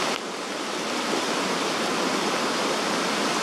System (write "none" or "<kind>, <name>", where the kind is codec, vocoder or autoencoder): none